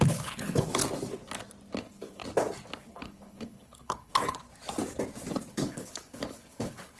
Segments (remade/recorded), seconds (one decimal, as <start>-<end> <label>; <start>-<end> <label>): 0.0-0.8 remade; 0.8-1.8 recorded; 1.8-2.2 remade; 2.2-2.8 recorded; 2.8-4.4 remade; 4.4-5.5 recorded; 5.5-7.0 remade